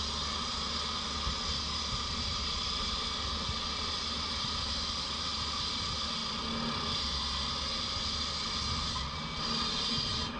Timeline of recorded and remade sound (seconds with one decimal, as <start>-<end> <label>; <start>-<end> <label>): 0.0-10.4 recorded